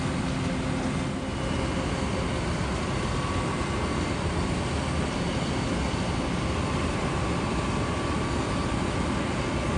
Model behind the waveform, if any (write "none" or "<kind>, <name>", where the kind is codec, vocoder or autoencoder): none